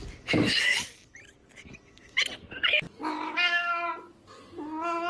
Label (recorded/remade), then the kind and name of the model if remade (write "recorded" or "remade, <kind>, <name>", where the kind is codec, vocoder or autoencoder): recorded